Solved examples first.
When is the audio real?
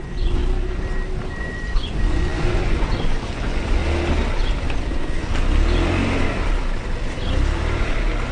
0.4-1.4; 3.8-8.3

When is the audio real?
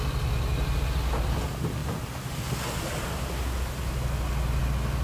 0.0-5.0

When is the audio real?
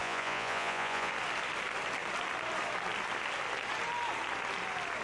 1.1-5.0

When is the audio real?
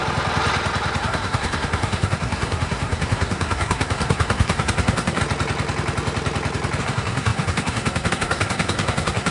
0.0-1.0; 5.2-6.8